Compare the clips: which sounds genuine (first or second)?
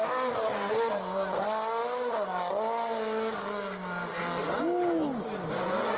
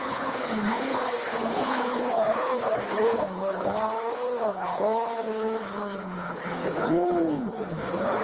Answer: first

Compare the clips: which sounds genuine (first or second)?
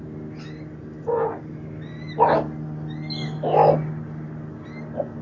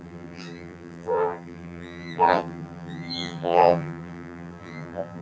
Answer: first